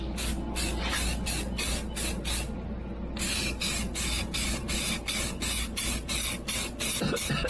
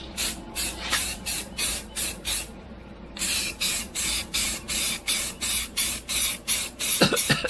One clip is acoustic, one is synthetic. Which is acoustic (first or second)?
first